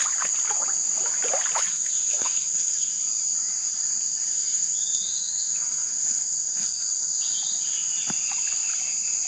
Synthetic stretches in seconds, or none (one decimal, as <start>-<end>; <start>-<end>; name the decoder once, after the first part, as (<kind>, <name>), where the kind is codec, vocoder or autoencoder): 1.7-3.0 (codec, SNAC); 4.3-7.2